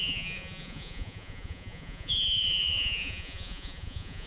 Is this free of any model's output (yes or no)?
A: no